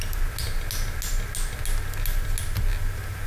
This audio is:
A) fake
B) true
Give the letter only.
B